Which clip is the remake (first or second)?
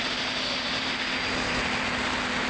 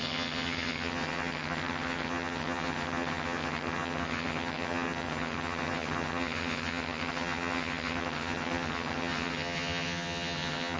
second